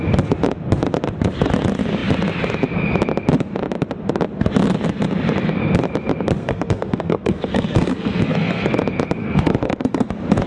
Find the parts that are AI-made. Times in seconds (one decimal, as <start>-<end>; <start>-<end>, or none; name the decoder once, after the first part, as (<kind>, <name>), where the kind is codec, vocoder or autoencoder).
6.4-8.7 (codec, SNAC); 9.2-10.1